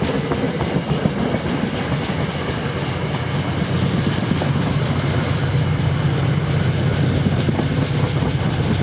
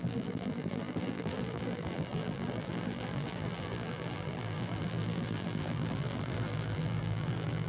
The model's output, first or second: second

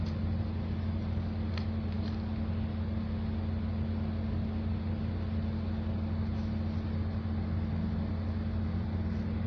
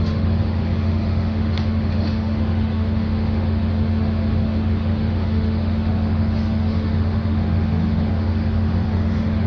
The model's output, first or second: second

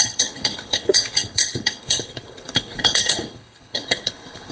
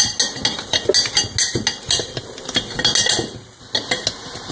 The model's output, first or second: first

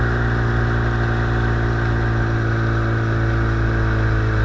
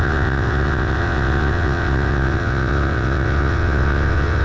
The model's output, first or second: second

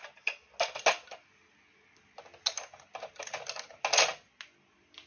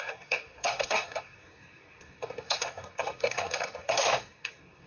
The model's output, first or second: second